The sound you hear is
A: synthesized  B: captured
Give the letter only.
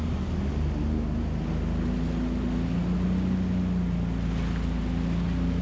B